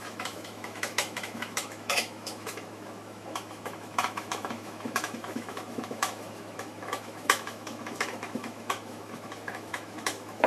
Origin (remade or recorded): remade